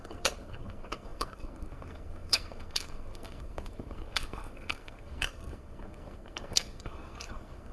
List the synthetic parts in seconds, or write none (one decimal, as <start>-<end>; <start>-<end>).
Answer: 0.0-7.7